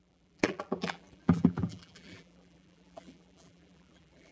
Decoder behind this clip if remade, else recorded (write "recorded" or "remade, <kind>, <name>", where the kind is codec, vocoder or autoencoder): remade, vocoder, BigVGAN v2